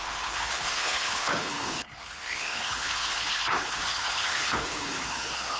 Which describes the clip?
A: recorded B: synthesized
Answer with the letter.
B